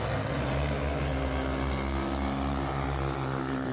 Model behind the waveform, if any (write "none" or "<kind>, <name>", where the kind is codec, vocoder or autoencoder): none